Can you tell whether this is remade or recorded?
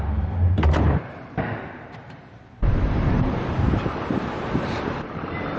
remade